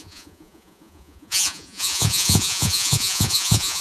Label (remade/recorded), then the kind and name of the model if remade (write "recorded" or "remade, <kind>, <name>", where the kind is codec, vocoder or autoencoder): remade, vocoder, Vocos